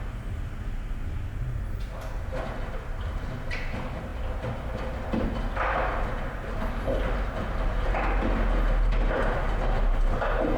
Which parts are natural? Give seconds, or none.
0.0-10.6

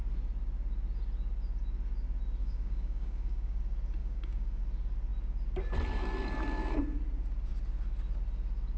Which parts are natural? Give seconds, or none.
0.0-2.4; 3.6-4.0; 4.6-8.8